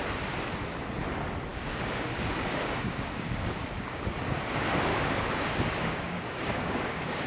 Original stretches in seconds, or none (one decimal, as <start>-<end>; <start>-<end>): 0.0-1.5; 4.4-4.9